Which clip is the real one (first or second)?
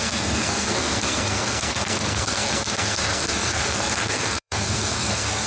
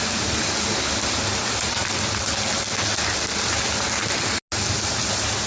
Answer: second